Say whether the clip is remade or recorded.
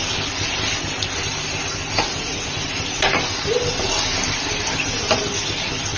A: recorded